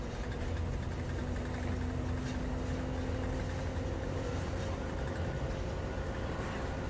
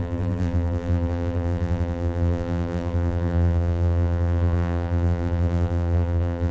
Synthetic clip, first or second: second